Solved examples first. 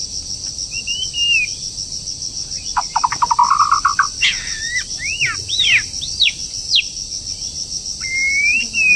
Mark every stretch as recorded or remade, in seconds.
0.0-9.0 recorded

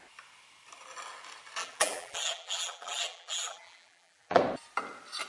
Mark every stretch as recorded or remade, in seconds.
0.0-1.6 recorded; 1.6-4.4 remade; 4.4-5.3 recorded